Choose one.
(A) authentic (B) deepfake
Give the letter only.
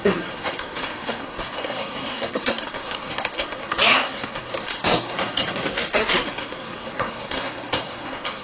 B